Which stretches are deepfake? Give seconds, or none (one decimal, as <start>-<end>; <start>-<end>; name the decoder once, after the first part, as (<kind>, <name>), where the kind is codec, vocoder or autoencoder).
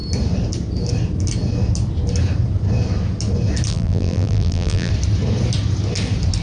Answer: 3.7-4.9 (vocoder, BigVGAN v2)